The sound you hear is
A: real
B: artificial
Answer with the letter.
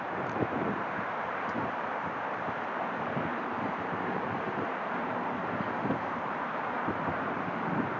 B